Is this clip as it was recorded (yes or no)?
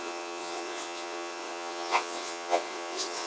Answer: no